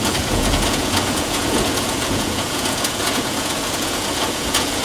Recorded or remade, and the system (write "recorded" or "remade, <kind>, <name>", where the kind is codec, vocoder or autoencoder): remade, vocoder, Vocos